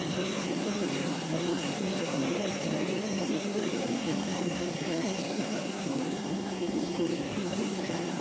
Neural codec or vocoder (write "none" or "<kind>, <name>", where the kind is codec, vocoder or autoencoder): codec, SNAC